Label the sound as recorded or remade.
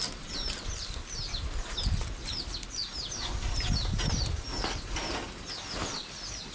recorded